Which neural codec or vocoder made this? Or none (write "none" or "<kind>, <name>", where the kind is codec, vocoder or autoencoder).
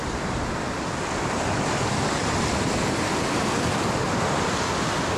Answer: none